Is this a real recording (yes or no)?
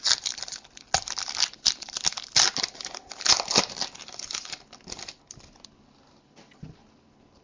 yes